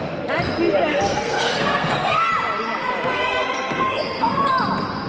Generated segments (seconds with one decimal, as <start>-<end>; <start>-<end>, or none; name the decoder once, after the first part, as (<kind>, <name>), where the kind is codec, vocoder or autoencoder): 0.9-2.3 (codec, SNAC); 3.1-4.5